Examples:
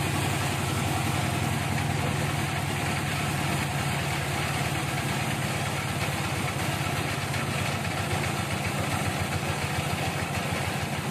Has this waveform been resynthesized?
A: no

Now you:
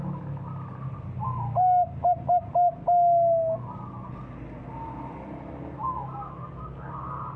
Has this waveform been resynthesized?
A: no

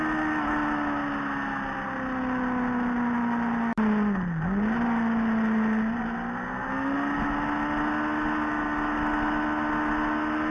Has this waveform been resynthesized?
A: no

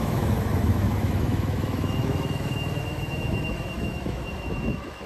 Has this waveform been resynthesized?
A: yes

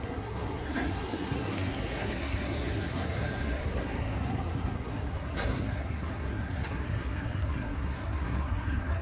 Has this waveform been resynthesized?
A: yes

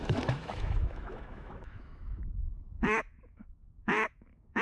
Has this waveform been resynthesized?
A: yes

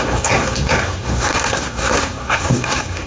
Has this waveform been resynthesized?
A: yes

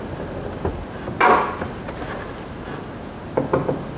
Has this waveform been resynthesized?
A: no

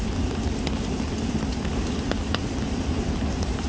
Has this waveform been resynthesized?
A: no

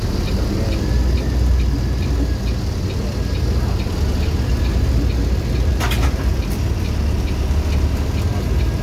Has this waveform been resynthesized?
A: no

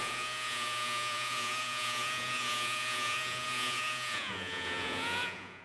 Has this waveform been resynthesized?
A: yes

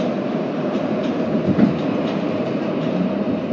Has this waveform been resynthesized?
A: yes